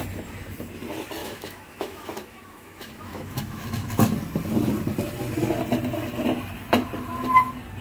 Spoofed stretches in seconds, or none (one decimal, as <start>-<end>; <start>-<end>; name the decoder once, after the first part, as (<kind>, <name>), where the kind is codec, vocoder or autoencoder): 1.2-3.9 (autoencoder, DAC-VAE)